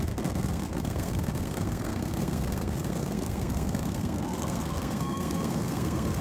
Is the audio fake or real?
fake